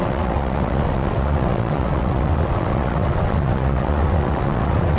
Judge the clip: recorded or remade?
remade